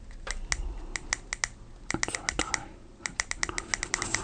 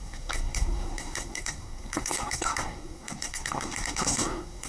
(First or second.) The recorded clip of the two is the first